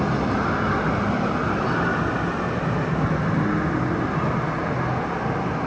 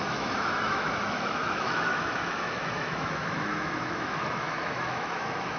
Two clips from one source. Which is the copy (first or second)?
second